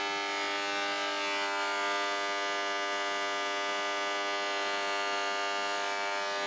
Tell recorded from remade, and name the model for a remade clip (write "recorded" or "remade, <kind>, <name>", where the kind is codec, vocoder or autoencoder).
recorded